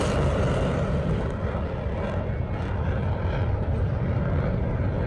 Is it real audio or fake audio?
fake